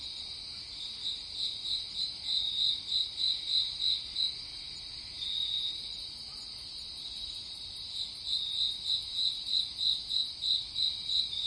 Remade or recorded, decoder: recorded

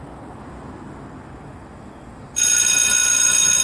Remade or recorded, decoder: recorded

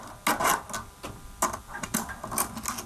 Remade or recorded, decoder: recorded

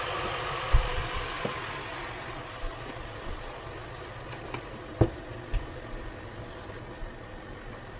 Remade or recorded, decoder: recorded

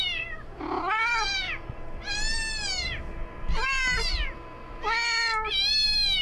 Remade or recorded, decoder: recorded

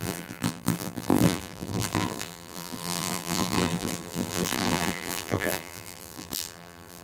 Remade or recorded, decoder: remade, vocoder, BigVGAN v2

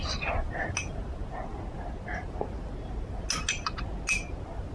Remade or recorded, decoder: recorded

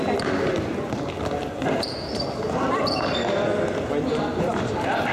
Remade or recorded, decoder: recorded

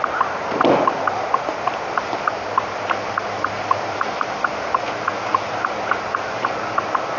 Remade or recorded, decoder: recorded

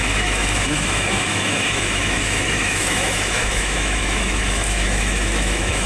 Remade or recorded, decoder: remade, autoencoder, DAC-VAE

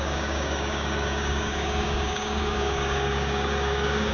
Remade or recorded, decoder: remade, codec, DAC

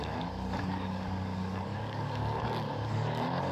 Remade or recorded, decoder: remade, codec, DAC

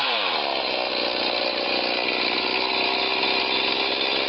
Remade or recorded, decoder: recorded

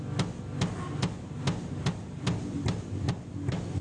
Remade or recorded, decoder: recorded